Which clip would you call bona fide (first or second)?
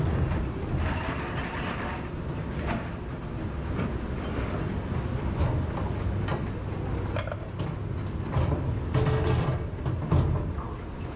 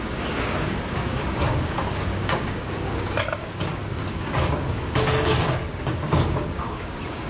first